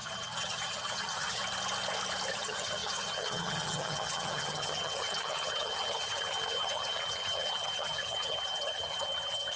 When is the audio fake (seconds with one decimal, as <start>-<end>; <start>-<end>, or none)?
0.0-1.4; 2.3-9.6